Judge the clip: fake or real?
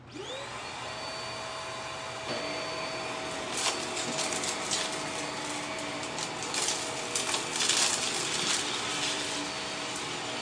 real